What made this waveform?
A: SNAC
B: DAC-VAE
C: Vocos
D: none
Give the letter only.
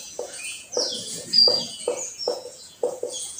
C